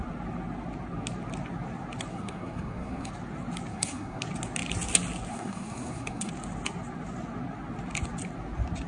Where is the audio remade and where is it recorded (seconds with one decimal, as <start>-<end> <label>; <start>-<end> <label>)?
0.0-2.1 recorded; 2.1-3.1 remade; 3.1-3.7 recorded; 3.7-4.2 remade; 4.2-5.3 recorded; 5.3-6.3 remade; 6.3-8.9 recorded